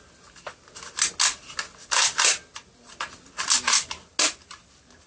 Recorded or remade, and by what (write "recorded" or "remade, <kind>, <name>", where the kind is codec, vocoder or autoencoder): recorded